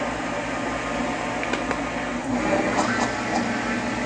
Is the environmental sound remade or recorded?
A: recorded